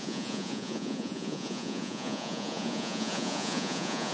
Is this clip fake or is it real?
fake